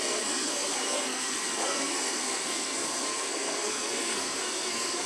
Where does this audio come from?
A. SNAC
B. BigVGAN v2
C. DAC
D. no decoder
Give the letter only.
A